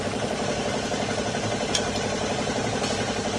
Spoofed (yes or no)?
no